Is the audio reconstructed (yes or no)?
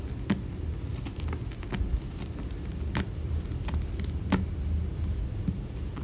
no